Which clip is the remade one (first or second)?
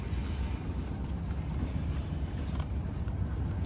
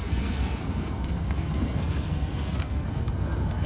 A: second